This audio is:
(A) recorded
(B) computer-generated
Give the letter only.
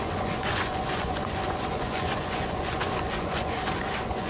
B